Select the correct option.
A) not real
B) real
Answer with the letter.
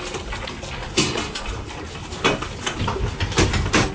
B